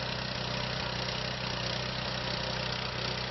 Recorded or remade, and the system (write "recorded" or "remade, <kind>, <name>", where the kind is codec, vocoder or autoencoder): recorded